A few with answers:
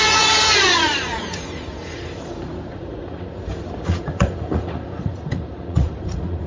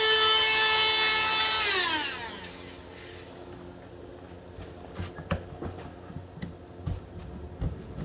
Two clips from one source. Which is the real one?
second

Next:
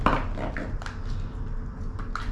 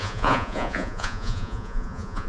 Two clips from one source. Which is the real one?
first